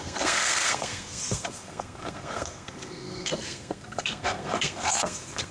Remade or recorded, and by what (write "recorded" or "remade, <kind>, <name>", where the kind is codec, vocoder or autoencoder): remade, codec, SNAC